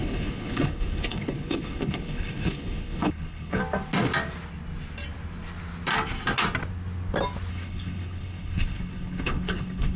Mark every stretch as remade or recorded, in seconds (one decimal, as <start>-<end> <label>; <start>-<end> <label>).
0.0-3.6 remade; 3.6-7.5 recorded; 7.5-10.0 remade